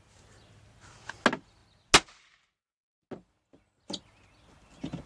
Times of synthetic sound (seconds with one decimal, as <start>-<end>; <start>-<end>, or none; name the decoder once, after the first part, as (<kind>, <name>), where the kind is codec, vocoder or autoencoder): none